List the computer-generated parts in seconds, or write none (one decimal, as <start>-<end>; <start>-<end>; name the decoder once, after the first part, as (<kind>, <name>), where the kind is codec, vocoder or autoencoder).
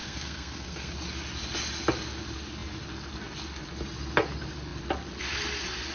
0.0-0.9 (codec, SNAC)